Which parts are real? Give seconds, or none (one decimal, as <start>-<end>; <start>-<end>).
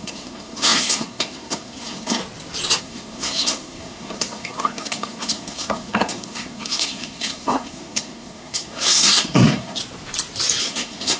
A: 2.2-2.8; 9.8-10.6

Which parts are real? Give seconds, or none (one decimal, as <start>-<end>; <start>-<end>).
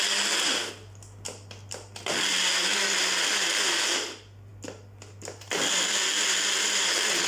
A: 0.0-7.3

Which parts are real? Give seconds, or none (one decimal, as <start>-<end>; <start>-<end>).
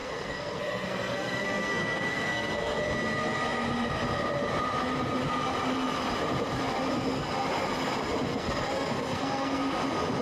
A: 2.8-8.3; 9.6-10.2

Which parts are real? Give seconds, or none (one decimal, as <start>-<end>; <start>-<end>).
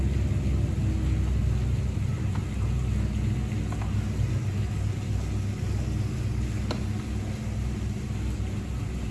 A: 0.0-9.1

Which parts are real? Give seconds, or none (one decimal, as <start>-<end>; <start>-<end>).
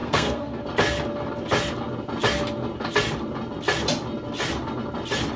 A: 0.6-5.4